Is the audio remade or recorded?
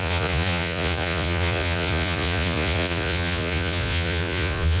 remade